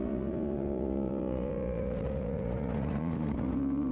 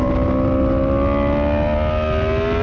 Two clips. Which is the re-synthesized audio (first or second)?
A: first